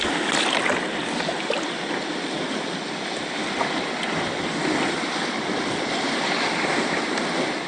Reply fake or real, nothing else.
real